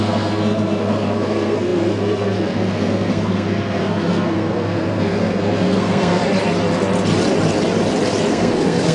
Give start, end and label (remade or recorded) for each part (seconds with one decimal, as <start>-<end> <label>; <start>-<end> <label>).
0.0-6.2 remade; 6.2-8.3 recorded; 8.3-8.9 remade